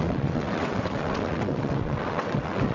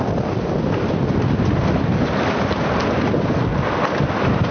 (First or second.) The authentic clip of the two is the second